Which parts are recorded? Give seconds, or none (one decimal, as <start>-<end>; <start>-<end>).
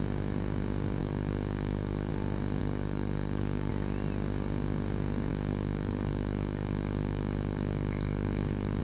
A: 0.0-1.0; 2.1-2.6; 3.7-5.3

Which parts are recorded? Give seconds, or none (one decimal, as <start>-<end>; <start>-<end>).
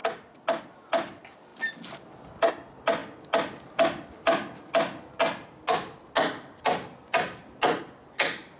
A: 0.0-8.6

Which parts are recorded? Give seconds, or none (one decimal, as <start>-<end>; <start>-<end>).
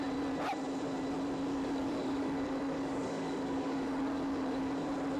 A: 0.0-1.5; 4.6-5.2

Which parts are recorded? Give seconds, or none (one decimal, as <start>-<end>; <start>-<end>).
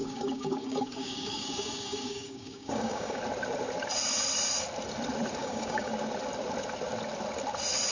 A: 3.2-5.4; 5.9-7.9